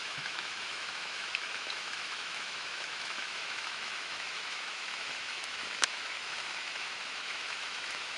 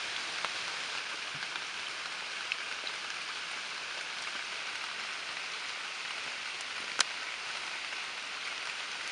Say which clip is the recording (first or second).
second